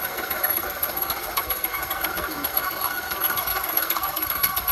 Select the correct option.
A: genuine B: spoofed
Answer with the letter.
B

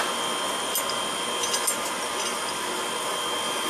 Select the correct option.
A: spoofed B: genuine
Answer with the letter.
B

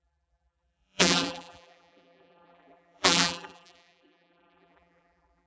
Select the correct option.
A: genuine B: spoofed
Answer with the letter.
B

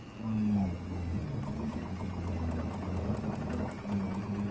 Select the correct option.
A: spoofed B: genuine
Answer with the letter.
B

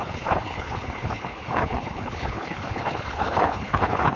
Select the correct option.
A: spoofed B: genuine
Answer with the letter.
A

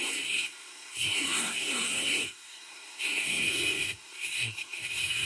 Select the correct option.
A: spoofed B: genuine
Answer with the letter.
A